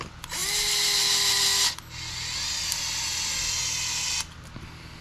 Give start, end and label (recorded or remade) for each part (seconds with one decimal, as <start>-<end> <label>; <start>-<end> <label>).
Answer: 0.0-5.0 recorded